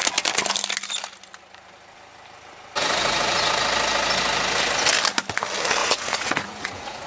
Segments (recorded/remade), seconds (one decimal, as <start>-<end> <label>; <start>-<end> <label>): 0.0-2.8 recorded; 2.8-3.5 remade; 3.5-5.8 recorded; 5.8-7.1 remade